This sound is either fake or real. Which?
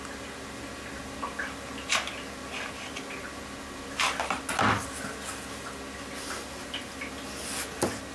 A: real